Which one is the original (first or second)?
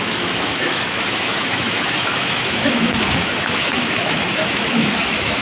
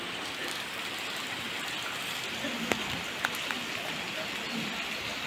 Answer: second